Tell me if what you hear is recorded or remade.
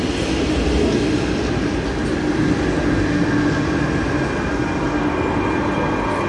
recorded